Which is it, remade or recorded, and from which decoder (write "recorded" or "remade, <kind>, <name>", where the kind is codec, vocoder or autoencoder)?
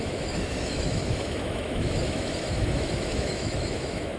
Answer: remade, autoencoder, DAC-VAE